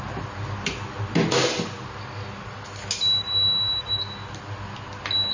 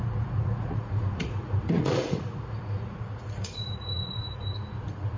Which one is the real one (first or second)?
first